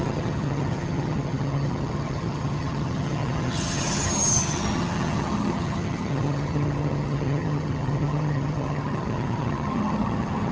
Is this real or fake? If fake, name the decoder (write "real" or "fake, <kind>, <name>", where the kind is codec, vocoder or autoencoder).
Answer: fake, vocoder, HiFi-GAN